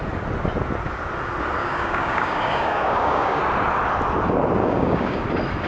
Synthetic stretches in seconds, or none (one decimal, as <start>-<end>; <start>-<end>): 1.6-3.4; 4.6-5.2

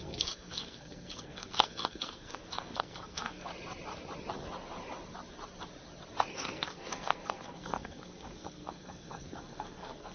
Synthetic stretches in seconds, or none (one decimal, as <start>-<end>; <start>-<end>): 0.0-3.5; 6.3-10.1

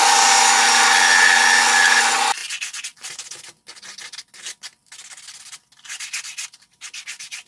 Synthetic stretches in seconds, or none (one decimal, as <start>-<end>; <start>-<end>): none

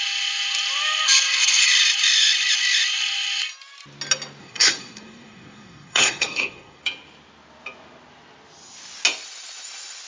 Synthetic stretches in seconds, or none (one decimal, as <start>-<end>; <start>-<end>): 4.4-6.8

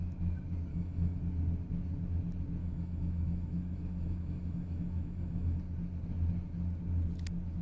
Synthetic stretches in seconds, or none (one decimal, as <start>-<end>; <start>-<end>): 0.7-1.2; 2.6-5.6